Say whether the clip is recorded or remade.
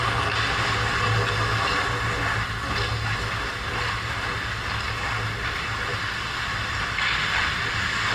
recorded